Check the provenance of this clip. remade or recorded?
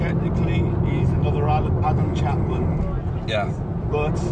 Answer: recorded